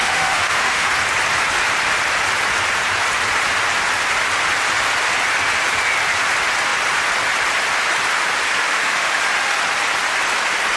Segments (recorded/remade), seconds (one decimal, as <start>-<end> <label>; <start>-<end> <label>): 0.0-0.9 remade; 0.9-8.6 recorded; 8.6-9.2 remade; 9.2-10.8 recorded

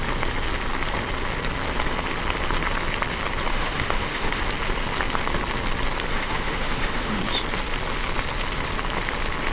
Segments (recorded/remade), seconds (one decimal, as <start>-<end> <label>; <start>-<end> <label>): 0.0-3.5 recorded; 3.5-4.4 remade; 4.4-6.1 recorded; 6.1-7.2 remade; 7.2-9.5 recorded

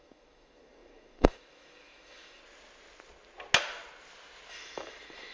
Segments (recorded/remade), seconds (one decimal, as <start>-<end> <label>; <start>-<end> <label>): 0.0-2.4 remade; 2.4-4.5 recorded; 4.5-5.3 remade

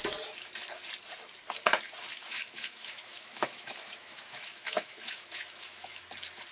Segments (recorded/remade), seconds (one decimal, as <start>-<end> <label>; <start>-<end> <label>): 0.0-2.1 recorded; 2.1-6.0 remade; 6.0-6.5 recorded

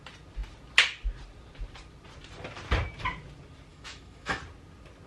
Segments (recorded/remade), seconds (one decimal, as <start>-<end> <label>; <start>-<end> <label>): 0.0-3.7 recorded; 3.7-4.4 remade; 4.4-5.1 recorded

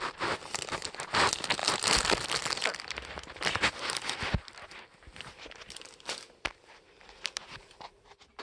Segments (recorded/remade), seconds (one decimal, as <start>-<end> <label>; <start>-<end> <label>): 0.0-8.4 recorded

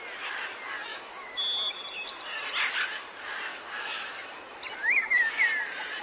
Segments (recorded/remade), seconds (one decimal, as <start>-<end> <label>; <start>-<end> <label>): 0.0-0.9 recorded; 0.9-1.4 remade; 1.4-3.5 recorded; 3.5-4.3 remade; 4.3-4.8 recorded; 4.8-5.4 remade; 5.4-6.0 recorded